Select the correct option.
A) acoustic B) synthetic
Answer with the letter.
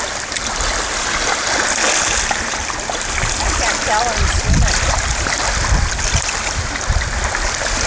A